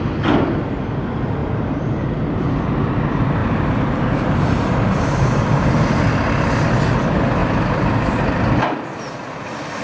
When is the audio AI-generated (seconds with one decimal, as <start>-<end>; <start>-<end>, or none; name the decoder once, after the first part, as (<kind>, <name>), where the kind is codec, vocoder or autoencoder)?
1.4-2.6 (vocoder, BigVGAN v2); 3.4-5.8; 7.4-8.1